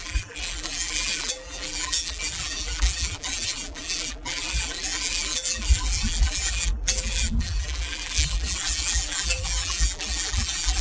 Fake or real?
fake